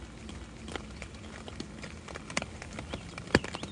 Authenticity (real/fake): real